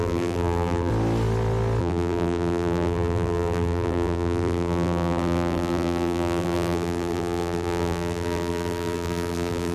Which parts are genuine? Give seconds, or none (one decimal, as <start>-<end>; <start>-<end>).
0.9-1.8